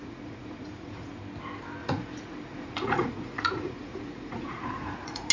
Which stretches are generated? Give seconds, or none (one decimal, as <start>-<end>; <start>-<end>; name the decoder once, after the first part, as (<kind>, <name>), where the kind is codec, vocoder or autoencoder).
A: 0.0-1.2 (vocoder, Vocos); 1.8-5.3